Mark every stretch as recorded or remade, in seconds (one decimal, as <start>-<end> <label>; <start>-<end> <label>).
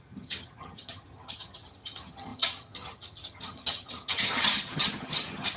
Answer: 0.0-5.6 remade